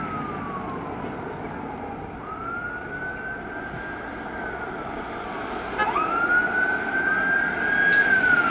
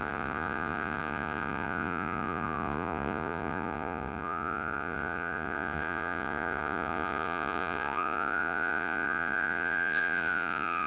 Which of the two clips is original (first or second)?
first